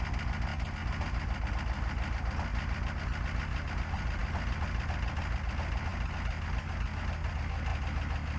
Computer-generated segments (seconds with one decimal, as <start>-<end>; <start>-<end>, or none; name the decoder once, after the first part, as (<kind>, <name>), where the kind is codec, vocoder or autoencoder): none

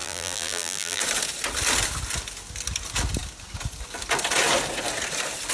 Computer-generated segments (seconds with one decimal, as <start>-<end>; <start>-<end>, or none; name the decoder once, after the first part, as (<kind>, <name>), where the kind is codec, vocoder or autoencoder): 0.0-1.0 (vocoder, BigVGAN v2)

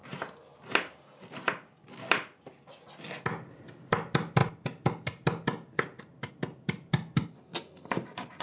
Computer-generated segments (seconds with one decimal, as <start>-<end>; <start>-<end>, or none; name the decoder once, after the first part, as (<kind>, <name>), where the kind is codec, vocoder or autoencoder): none

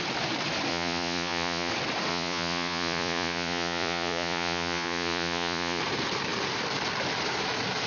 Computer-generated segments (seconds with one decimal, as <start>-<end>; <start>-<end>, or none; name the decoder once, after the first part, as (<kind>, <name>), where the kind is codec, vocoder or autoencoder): 0.7-1.7 (vocoder, Vocos); 2.1-5.8

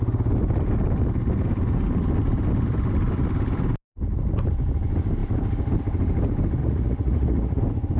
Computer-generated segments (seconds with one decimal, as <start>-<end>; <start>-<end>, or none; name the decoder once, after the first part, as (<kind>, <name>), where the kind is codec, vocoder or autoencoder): 6.6-7.6 (vocoder, Vocos)

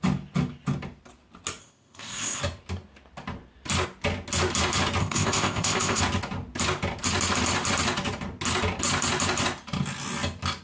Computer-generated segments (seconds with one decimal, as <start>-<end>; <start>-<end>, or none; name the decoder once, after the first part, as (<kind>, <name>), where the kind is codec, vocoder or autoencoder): 1.6-2.4 (codec, ZipCodec); 5.0-6.0

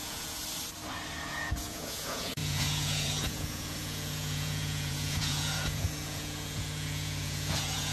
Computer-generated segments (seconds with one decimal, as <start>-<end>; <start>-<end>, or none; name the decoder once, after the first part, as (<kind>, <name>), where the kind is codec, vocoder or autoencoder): 0.0-0.4 (vocoder, Vocos); 1.3-7.9

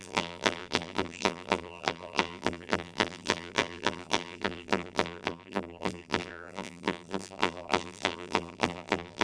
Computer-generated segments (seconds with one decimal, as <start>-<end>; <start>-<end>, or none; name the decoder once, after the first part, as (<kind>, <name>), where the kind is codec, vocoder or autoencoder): 0.0-9.2 (vocoder, BigVGAN v2)